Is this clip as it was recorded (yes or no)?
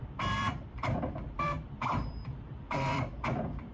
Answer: no